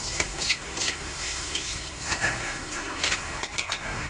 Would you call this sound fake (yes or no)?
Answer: yes